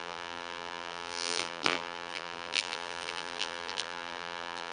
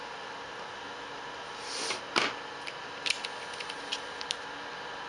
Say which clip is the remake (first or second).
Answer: first